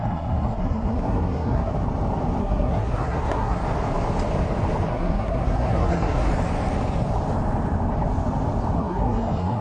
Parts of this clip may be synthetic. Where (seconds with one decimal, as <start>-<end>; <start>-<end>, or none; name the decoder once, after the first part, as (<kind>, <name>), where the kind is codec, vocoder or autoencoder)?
0.0-1.7 (codec, SNAC); 2.4-3.6; 4.9-6.3; 8.8-9.6